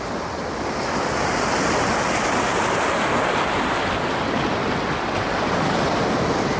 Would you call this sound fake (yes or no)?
no